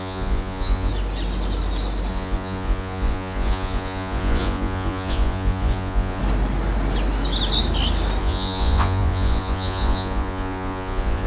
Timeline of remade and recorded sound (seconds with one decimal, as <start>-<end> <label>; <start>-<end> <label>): 0.0-0.9 remade; 0.9-2.1 recorded; 2.1-6.2 remade; 6.2-8.2 recorded; 8.2-11.3 remade